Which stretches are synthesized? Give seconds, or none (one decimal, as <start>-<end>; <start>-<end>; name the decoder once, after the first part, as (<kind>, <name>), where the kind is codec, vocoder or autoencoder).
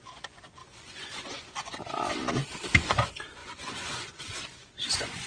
0.0-2.2 (vocoder, Vocos); 2.8-5.3